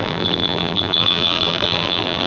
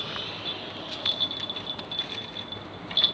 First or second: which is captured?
second